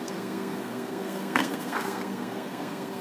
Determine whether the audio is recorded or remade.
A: remade